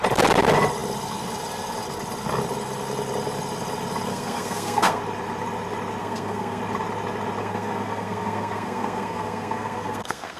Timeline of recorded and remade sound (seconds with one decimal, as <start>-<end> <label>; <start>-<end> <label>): 0.0-4.1 recorded; 4.1-5.0 remade; 5.0-6.0 recorded; 6.0-6.6 remade; 6.6-7.4 recorded; 7.4-10.4 remade